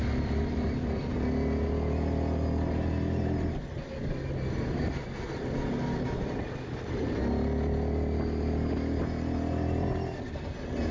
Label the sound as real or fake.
real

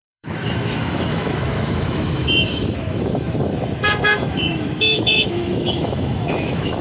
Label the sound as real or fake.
fake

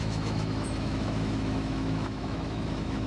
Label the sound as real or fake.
fake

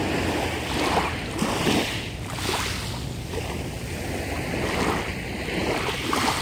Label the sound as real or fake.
real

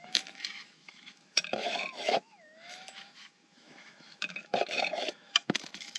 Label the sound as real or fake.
fake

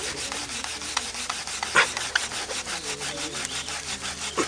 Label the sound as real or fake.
real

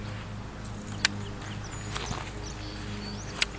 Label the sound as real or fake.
real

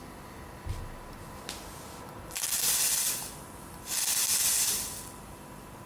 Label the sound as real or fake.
real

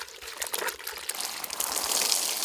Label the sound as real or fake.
real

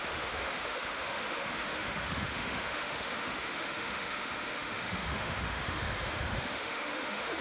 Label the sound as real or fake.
fake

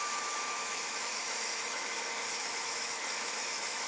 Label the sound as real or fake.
fake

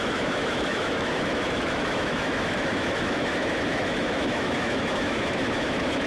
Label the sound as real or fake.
fake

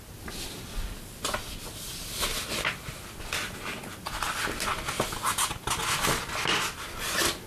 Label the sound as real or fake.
real